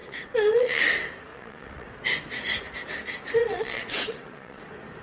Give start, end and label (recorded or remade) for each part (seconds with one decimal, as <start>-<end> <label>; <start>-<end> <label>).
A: 0.0-0.8 remade; 0.8-1.3 recorded; 1.3-1.9 remade; 1.9-3.4 recorded; 3.4-4.6 remade; 4.6-5.0 recorded